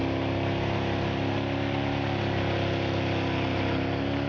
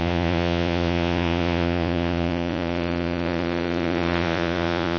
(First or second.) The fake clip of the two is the second